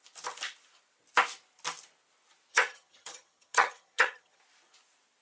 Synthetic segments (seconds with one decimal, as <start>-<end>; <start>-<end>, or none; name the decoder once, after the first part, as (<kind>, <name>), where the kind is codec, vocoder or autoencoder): 2.5-4.4 (vocoder, HiFi-GAN)